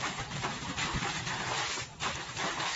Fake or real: fake